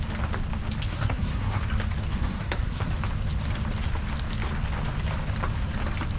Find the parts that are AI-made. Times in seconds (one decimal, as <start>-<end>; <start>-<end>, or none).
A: 0.9-1.6; 2.1-2.9